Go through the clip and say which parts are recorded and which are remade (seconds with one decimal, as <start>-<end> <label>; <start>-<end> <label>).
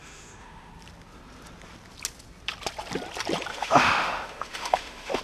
0.0-0.7 remade; 0.7-3.5 recorded; 3.5-5.2 remade